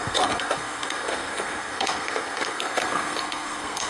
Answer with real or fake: fake